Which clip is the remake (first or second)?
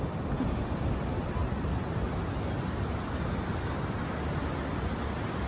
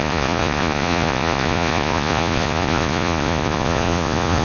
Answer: second